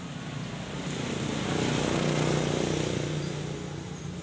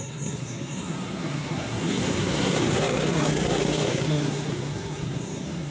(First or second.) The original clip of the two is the first